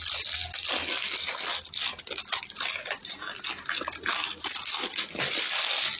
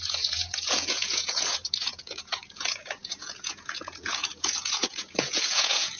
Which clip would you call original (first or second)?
first